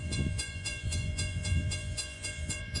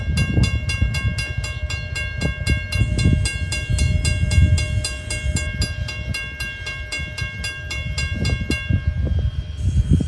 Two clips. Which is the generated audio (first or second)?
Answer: first